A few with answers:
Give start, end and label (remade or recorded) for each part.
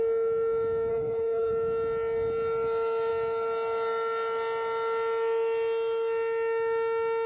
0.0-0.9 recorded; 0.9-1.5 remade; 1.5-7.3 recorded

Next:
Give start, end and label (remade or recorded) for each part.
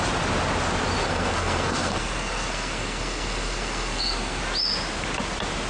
0.0-1.0 recorded; 1.0-4.4 remade; 4.4-5.7 recorded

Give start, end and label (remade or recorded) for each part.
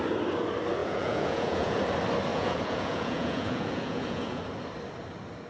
0.0-0.8 recorded; 0.8-1.8 remade; 1.8-2.3 recorded; 2.3-4.4 remade; 4.4-5.5 recorded